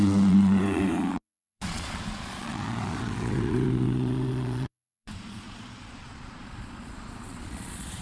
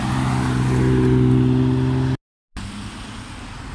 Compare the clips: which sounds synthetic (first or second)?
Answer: first